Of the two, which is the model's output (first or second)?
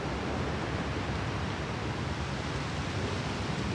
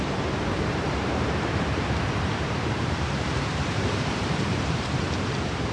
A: second